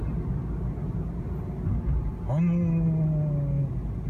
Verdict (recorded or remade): recorded